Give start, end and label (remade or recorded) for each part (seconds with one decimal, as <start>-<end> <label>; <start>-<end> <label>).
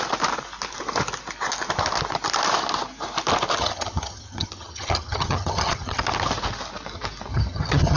0.0-3.6 recorded; 3.6-6.0 remade; 6.0-7.3 recorded; 7.3-8.0 remade